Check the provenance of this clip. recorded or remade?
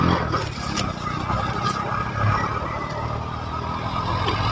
recorded